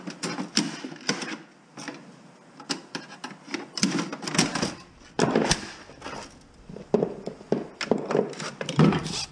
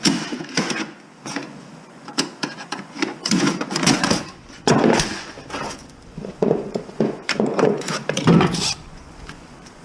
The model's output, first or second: second